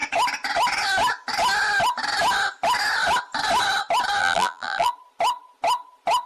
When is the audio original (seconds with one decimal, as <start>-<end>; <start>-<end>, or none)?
0.0-4.2; 4.9-6.3